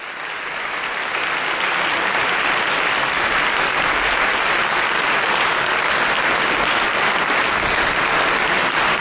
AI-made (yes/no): no